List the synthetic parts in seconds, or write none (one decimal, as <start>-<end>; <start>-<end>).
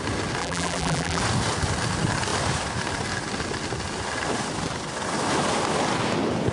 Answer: 0.4-1.2